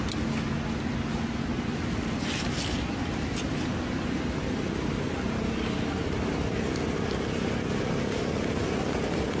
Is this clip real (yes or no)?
yes